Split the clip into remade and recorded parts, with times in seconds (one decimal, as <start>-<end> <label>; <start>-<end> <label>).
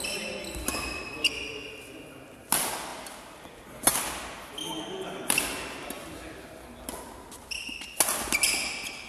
0.0-9.1 recorded